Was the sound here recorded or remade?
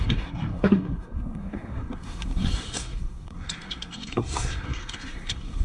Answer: remade